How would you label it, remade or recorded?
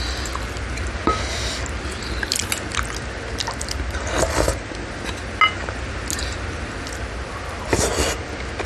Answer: recorded